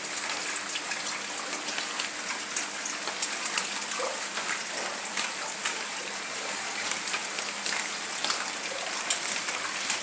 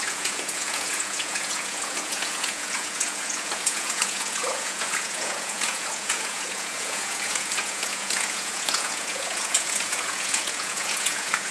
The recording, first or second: first